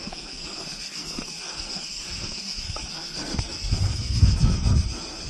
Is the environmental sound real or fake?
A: fake